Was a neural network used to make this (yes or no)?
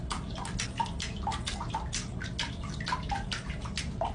no